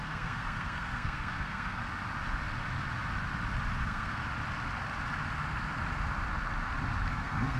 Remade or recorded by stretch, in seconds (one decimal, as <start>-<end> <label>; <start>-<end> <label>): 0.0-1.8 remade; 1.8-3.8 recorded; 3.8-4.2 remade; 4.2-7.1 recorded; 7.1-7.6 remade